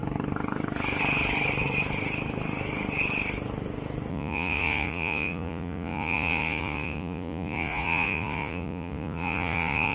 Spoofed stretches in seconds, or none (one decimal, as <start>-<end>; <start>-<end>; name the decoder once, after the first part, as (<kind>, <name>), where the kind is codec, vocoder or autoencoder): 4.1-9.9 (vocoder, Vocos)